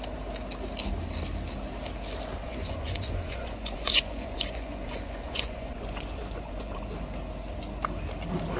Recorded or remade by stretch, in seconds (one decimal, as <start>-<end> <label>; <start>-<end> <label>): 0.0-2.4 recorded; 2.4-6.9 remade; 6.9-8.6 recorded